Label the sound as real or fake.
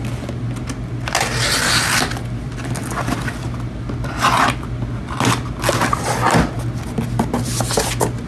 real